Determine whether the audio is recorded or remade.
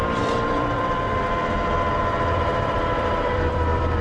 remade